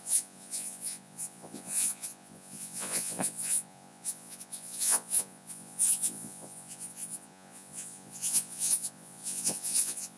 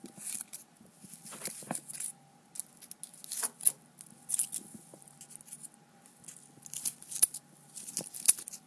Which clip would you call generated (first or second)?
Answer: first